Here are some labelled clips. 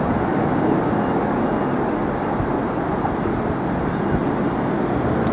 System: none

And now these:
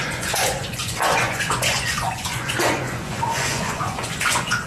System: vocoder, Vocos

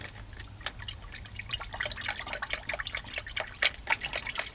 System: none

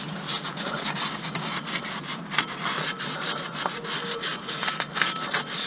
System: none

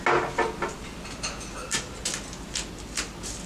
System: none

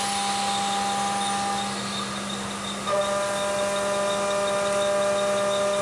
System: none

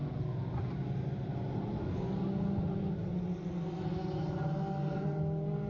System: none